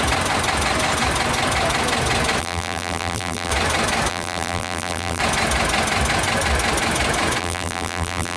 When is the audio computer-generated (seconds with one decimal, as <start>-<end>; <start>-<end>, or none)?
2.4-3.5; 4.1-5.2; 7.4-8.4